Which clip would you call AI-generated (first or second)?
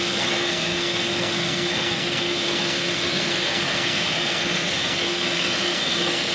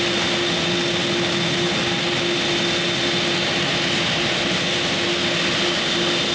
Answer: first